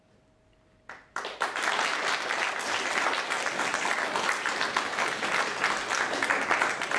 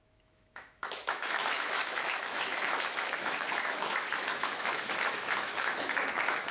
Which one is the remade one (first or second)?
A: second